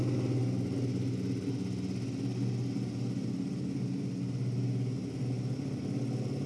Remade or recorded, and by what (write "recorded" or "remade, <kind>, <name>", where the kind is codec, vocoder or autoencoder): recorded